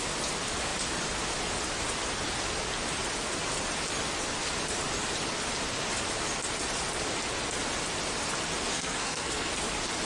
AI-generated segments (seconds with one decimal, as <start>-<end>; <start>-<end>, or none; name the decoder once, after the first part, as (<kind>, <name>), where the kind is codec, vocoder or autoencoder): 8.7-9.5 (codec, SNAC)